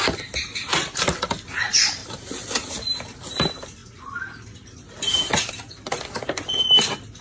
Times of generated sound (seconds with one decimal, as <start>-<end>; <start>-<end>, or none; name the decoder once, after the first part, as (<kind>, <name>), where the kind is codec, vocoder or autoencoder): 2.0-2.7 (vocoder, BigVGAN v2)